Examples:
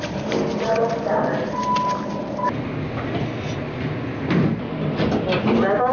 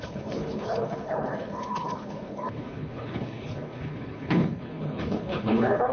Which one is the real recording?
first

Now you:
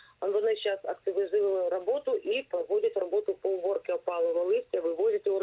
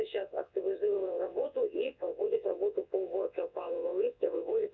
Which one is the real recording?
first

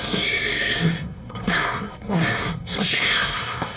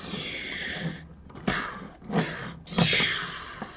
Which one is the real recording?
second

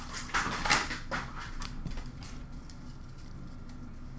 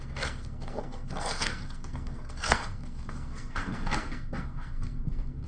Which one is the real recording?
first